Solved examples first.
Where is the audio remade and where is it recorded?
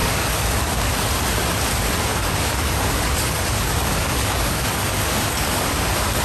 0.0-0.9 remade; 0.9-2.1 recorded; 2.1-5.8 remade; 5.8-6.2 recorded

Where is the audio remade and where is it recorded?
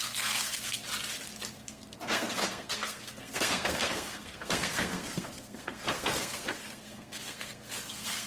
0.0-0.8 remade; 0.8-1.5 recorded; 1.5-8.3 remade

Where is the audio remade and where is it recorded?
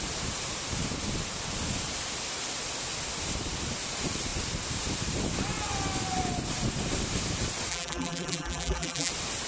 0.0-7.7 recorded; 7.7-9.1 remade; 9.1-9.5 recorded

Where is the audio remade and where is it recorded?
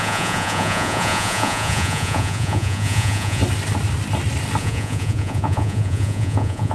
0.0-3.4 remade; 3.4-4.6 recorded; 4.6-6.7 remade